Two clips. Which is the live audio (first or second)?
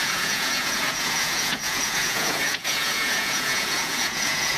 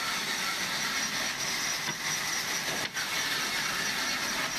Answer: second